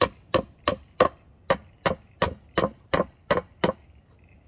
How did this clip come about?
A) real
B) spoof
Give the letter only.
A